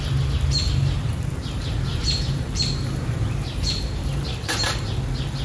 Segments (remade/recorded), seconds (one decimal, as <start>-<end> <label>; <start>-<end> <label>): 0.0-1.6 recorded; 1.6-4.8 remade; 4.8-5.4 recorded